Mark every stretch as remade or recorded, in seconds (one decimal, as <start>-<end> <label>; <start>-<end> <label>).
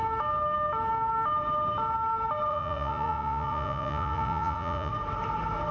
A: 0.0-2.5 recorded; 2.5-4.9 remade; 4.9-5.7 recorded